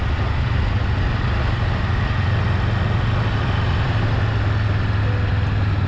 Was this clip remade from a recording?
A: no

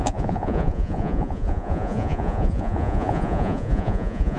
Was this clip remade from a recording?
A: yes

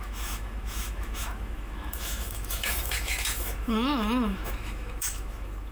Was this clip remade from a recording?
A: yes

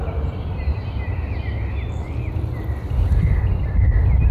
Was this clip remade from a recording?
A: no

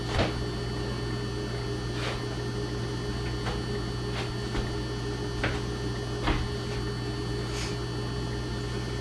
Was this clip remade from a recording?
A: no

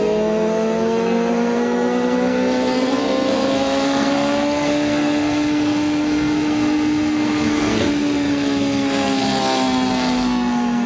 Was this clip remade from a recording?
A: yes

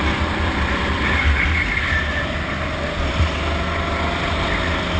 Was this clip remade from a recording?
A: no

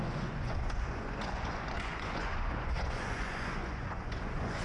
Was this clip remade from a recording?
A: yes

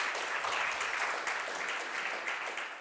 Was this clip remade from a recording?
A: no